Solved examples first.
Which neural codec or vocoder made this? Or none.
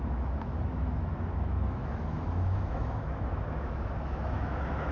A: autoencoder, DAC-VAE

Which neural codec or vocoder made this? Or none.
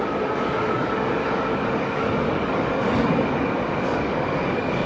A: codec, DAC